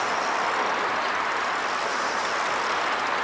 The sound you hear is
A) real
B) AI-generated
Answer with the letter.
A